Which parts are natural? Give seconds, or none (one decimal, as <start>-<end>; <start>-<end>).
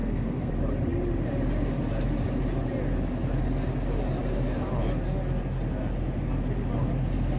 0.5-7.4